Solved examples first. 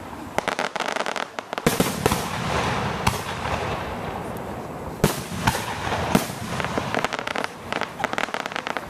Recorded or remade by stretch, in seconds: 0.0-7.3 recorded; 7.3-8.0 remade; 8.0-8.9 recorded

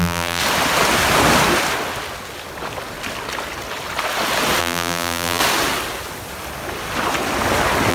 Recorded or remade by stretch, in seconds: 0.0-0.4 remade; 0.4-4.6 recorded; 4.6-5.4 remade; 5.4-7.9 recorded

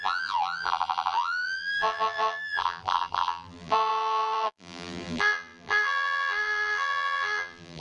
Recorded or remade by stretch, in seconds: 0.0-7.8 remade